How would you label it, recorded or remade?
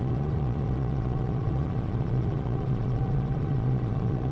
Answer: remade